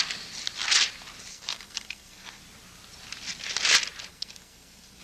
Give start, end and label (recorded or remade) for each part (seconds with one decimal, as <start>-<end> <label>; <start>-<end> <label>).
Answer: 0.0-1.3 recorded; 1.3-2.4 remade; 2.4-4.1 recorded; 4.1-5.0 remade